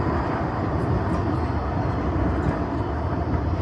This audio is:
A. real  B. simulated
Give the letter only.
A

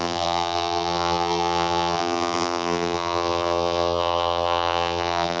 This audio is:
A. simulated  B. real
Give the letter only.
A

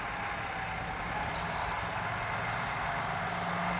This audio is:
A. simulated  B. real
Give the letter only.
B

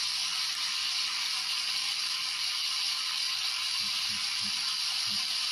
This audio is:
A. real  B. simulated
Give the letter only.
A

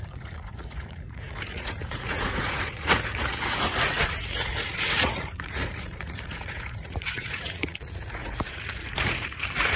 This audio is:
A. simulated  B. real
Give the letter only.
A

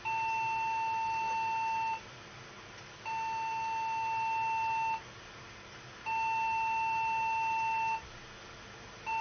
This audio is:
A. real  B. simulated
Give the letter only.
A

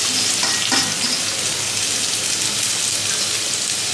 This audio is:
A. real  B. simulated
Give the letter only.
A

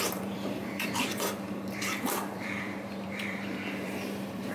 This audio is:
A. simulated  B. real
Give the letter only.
A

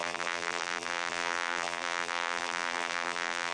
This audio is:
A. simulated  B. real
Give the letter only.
A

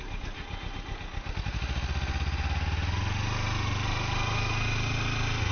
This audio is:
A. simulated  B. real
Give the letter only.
B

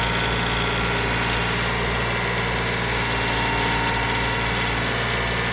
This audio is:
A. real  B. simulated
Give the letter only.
A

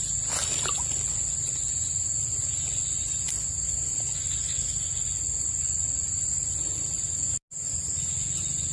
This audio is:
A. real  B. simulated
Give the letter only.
A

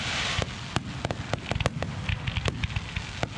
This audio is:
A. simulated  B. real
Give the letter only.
B